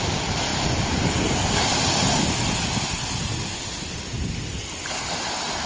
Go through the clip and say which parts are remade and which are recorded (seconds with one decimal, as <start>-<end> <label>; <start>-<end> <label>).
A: 0.0-0.5 remade; 0.5-1.1 recorded; 1.1-1.7 remade; 1.7-2.8 recorded; 2.8-3.3 remade; 3.3-4.7 recorded; 4.7-5.7 remade